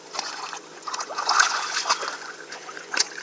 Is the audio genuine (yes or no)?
no